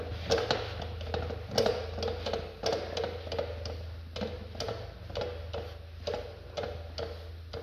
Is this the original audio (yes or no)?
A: yes